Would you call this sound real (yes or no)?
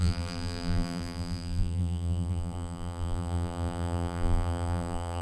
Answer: no